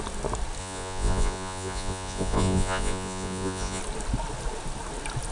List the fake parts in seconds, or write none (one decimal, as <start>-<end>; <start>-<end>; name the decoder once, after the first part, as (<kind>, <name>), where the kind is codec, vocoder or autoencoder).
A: 0.6-3.8 (vocoder, Vocos)